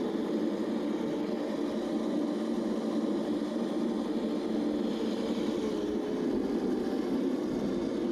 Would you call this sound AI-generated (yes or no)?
no